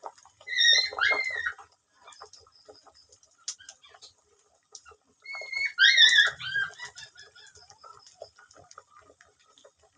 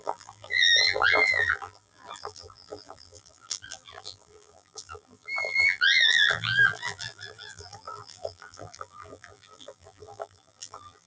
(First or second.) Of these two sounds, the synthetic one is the second